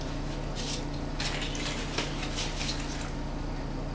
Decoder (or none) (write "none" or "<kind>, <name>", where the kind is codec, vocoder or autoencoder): none